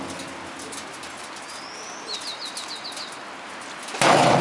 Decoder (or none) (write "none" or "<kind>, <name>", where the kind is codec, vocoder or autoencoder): none